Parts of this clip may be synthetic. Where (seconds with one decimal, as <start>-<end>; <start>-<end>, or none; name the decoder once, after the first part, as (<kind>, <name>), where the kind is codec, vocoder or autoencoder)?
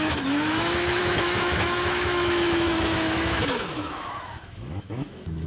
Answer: 0.0-5.5 (autoencoder, DAC-VAE)